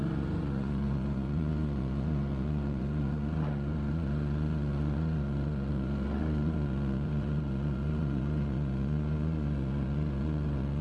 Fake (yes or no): yes